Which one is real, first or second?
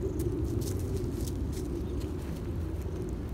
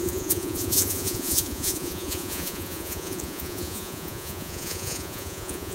first